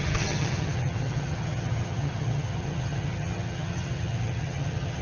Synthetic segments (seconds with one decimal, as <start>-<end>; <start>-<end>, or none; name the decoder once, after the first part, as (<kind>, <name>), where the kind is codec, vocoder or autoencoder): 0.0-5.0 (vocoder, HiFi-GAN)